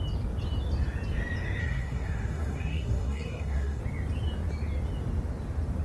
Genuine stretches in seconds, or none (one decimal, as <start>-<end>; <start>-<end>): 0.0-1.6; 3.8-5.8